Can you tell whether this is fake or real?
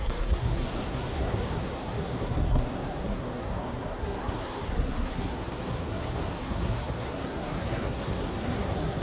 fake